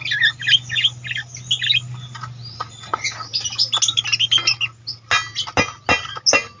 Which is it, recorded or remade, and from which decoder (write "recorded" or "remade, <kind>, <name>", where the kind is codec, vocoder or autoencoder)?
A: recorded